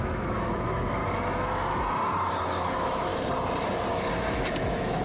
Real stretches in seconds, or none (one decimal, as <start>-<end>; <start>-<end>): 1.0-2.3; 3.1-3.9